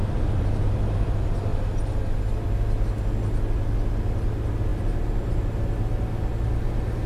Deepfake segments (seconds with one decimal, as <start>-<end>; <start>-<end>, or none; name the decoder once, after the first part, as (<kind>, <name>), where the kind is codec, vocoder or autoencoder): none